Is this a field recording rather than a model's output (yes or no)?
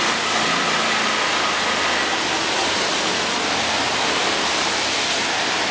yes